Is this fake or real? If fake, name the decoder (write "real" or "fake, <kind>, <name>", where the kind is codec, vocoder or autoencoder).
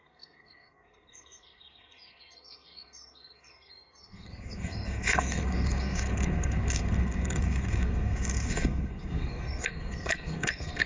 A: fake, codec, SNAC